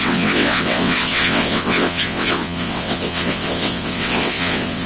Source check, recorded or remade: remade